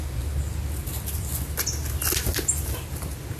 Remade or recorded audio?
recorded